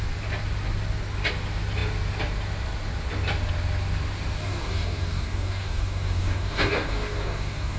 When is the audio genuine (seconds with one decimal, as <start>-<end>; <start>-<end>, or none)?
0.0-4.4